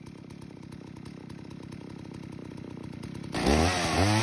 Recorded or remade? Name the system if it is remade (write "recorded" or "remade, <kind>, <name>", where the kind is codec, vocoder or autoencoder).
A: recorded